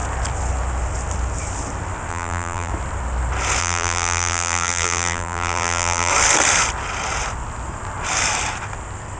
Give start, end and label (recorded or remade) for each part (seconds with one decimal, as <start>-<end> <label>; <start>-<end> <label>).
0.0-2.1 recorded; 2.1-2.7 remade; 2.7-3.6 recorded; 3.6-6.1 remade; 6.1-9.2 recorded